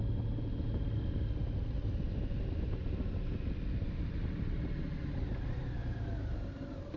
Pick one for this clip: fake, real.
real